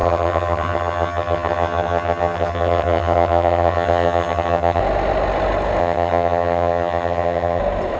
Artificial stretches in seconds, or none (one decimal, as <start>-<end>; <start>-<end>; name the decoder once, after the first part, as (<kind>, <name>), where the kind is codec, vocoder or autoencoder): 0.0-4.8 (vocoder, HiFi-GAN); 5.8-7.6